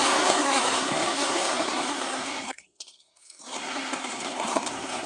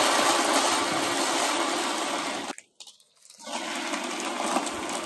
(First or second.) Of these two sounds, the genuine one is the second